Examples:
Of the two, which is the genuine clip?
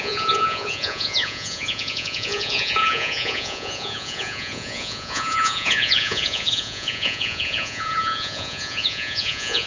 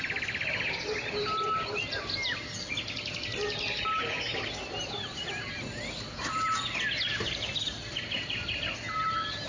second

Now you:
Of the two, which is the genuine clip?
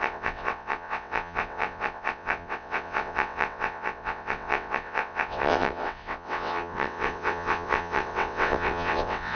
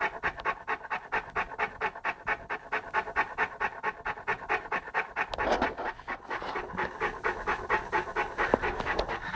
second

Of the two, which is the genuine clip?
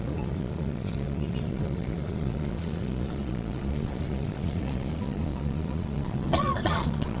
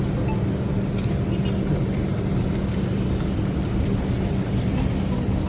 second